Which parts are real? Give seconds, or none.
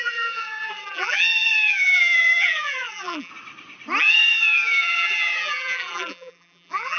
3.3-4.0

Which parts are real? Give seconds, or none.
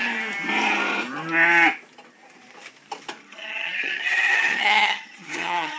0.0-3.2